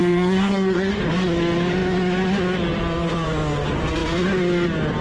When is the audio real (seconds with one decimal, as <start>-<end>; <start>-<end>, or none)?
1.0-5.0